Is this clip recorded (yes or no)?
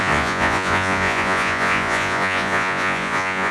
no